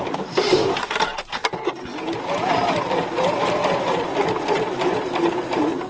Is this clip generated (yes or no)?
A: no